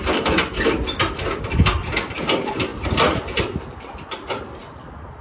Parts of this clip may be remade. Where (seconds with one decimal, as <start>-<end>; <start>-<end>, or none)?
none